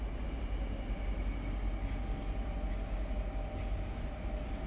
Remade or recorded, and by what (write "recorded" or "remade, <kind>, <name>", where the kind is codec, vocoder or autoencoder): recorded